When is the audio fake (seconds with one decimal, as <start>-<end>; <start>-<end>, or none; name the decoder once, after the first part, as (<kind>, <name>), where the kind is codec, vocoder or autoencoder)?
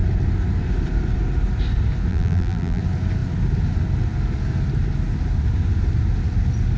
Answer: 2.1-2.8 (vocoder, BigVGAN v2)